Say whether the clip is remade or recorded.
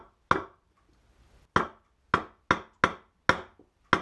recorded